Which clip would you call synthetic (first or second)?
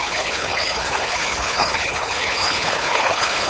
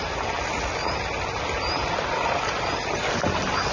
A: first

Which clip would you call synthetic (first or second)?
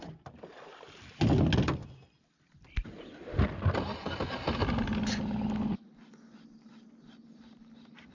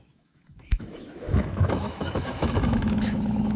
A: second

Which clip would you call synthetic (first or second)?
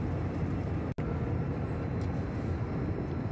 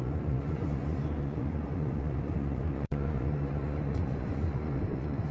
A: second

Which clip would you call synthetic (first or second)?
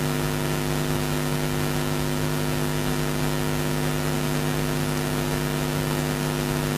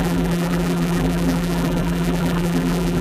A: second